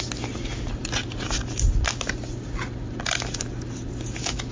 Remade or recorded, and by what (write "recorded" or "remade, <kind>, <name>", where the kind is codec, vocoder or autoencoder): recorded